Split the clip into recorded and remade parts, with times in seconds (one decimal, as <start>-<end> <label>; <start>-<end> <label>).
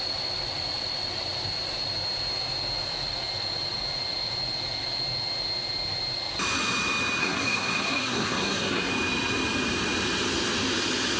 0.0-7.2 recorded; 7.2-8.9 remade; 8.9-11.2 recorded